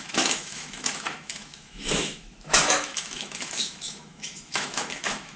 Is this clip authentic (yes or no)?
no